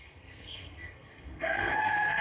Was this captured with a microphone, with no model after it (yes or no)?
no